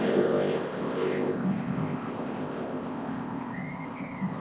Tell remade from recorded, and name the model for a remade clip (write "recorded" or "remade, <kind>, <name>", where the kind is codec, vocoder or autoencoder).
remade, codec, ZipCodec